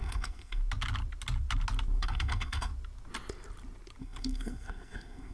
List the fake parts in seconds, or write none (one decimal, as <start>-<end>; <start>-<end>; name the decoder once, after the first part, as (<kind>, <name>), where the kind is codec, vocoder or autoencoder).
0.0-0.6 (codec, SNAC); 2.0-2.7; 4.0-5.3